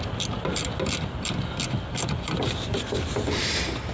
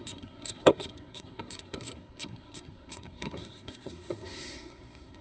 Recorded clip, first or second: first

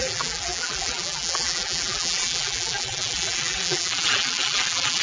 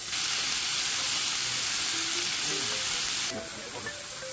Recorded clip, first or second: second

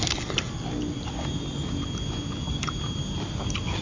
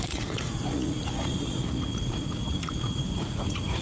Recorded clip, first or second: first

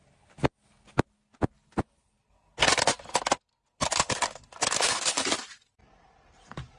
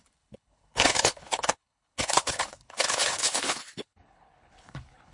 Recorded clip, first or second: first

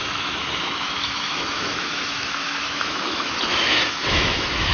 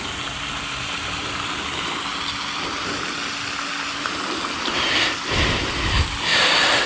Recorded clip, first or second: second